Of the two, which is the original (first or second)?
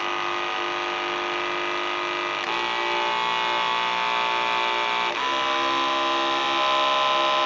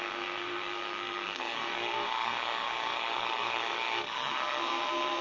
first